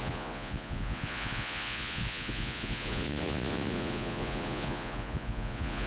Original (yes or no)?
no